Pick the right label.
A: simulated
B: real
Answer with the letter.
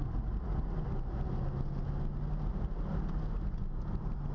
B